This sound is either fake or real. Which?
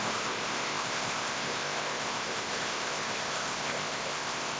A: fake